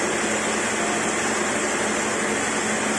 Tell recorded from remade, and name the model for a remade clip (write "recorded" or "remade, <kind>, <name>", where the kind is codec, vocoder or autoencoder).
recorded